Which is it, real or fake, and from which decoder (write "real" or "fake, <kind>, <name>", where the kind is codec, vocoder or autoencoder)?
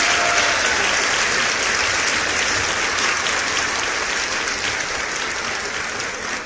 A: real